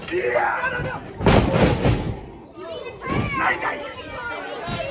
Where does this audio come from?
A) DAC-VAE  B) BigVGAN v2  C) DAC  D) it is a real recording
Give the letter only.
D